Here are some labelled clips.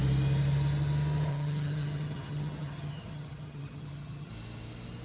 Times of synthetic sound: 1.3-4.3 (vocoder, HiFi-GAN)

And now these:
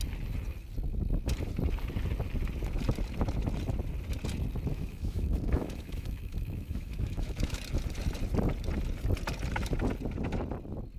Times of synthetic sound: 4.7-7.6 (autoencoder, DAC-VAE)

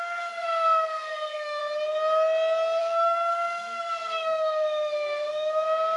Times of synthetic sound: 0.0-1.6 (codec, SNAC); 2.8-6.0

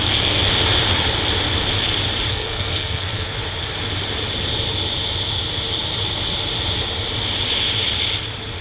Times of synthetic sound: 0.0-0.5 (codec, SNAC); 2.3-3.3

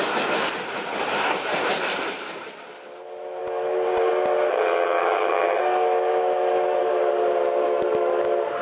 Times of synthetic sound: 4.5-5.6 (vocoder, HiFi-GAN)

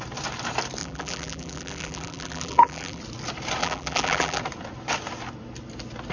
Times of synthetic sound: 0.8-3.0 (vocoder, BigVGAN v2); 3.6-4.4